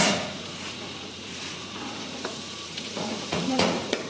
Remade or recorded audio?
remade